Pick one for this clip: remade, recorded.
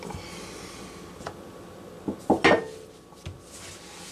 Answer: recorded